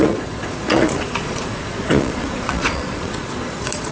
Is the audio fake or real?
fake